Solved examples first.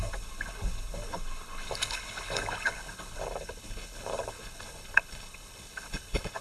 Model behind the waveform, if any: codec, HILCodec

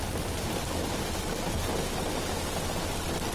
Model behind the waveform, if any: none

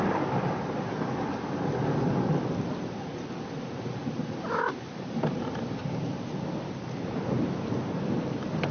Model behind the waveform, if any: none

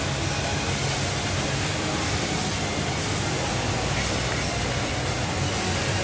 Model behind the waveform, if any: none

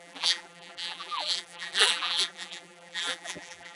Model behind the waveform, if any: vocoder, BigVGAN v2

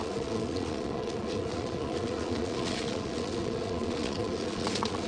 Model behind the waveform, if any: vocoder, Vocos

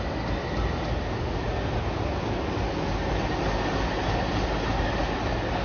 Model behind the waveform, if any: none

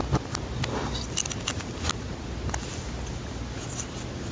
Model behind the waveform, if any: none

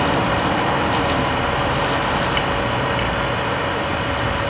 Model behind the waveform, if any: none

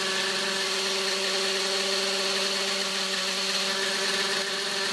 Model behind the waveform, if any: none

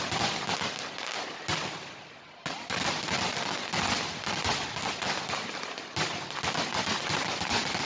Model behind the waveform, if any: none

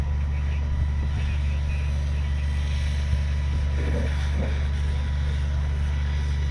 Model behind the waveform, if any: none